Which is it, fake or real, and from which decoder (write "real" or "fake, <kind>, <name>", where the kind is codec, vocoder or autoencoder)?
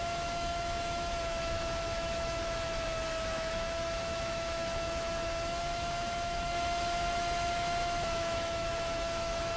fake, autoencoder, DAC-VAE